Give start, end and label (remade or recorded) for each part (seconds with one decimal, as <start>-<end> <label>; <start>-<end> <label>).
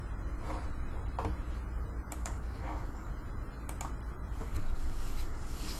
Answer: 0.0-2.2 recorded; 2.2-3.1 remade; 3.1-4.4 recorded; 4.4-5.8 remade